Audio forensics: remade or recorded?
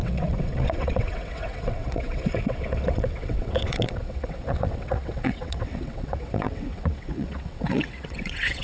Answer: remade